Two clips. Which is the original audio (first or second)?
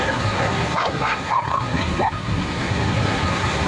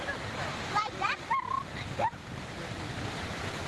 second